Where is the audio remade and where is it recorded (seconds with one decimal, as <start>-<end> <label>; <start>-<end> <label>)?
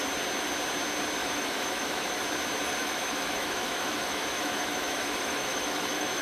0.0-1.2 recorded; 1.2-2.1 remade; 2.1-2.8 recorded; 2.8-6.2 remade